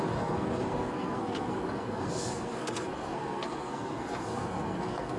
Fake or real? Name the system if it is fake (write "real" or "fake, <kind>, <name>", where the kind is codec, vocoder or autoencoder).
fake, codec, SNAC